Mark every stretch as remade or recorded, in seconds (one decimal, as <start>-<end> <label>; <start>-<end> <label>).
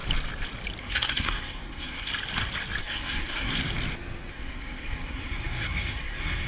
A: 0.0-0.8 recorded; 0.8-2.1 remade; 2.1-2.8 recorded; 2.8-3.5 remade; 3.5-4.3 recorded; 4.3-6.5 remade